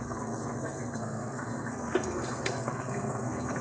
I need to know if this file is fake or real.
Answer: fake